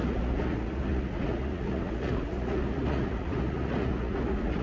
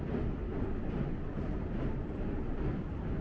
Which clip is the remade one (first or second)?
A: first